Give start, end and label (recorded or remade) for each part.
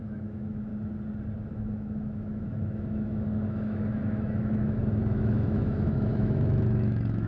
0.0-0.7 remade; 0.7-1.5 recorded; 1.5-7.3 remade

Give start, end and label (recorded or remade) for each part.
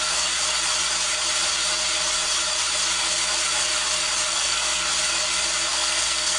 0.0-4.3 recorded; 4.3-4.9 remade; 4.9-5.7 recorded; 5.7-6.4 remade